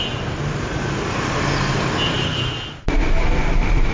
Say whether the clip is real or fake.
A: real